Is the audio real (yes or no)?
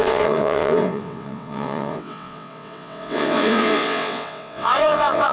no